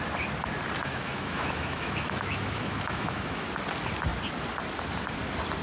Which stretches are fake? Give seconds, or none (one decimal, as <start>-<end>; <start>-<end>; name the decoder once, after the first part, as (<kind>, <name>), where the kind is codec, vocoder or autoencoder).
0.8-3.5 (autoencoder, DAC-VAE)